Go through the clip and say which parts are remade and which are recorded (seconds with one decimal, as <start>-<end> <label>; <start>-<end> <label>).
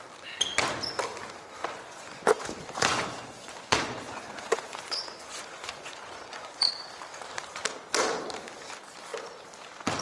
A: 0.0-1.6 recorded; 1.6-6.7 remade; 6.7-10.0 recorded